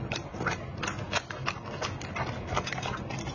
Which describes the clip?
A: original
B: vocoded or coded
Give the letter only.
A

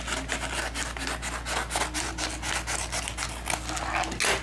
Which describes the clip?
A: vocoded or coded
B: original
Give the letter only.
B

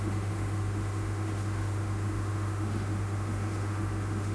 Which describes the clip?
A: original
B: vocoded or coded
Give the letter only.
B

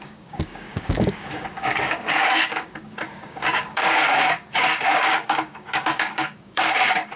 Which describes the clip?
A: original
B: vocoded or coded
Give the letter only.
B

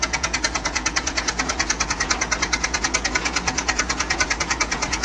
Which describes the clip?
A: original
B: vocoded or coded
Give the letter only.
B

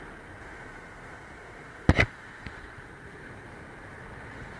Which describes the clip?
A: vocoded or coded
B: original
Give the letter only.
B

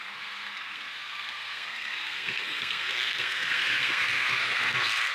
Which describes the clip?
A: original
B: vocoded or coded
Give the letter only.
B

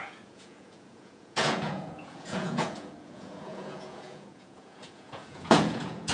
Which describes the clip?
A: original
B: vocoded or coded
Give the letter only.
B